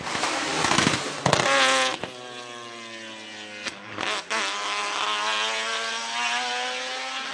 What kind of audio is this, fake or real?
real